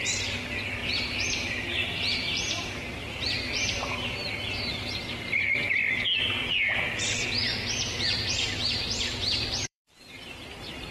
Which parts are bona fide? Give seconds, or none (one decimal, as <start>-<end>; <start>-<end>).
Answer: 0.8-1.5; 5.6-8.0